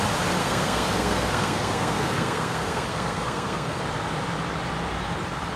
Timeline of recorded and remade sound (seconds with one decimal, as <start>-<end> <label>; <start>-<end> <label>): 0.0-0.4 recorded; 0.4-3.8 remade; 3.8-5.6 recorded